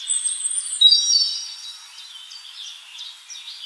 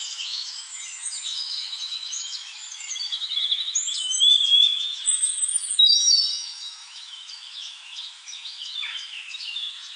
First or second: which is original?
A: first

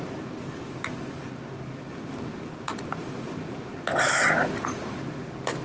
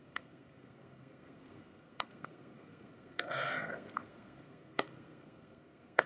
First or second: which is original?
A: first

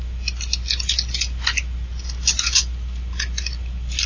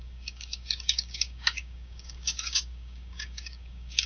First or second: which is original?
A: first